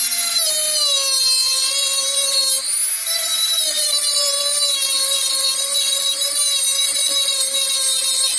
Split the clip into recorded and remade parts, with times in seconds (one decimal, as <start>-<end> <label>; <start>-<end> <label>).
0.0-1.4 recorded; 1.4-2.4 remade; 2.4-3.3 recorded; 3.3-4.4 remade; 4.4-8.4 recorded